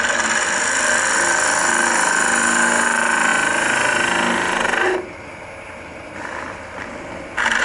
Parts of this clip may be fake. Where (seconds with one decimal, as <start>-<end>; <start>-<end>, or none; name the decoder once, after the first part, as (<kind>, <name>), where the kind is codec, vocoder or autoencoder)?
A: none